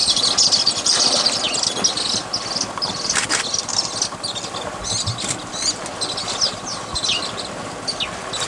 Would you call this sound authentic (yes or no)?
yes